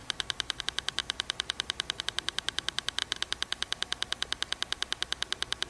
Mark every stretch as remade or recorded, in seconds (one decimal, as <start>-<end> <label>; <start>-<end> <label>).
0.0-1.0 remade; 1.0-2.0 recorded; 2.0-3.0 remade; 3.0-5.7 recorded